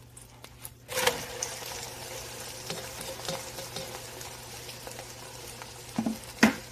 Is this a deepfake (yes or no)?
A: yes